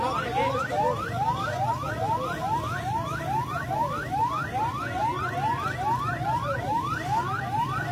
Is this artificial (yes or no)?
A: no